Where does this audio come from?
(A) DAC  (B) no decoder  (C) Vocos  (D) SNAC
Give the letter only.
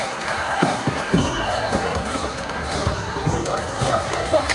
D